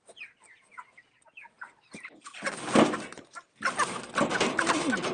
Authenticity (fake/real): real